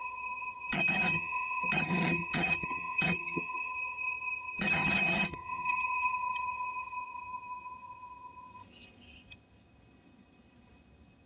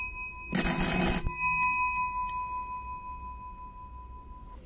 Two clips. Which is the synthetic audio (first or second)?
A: first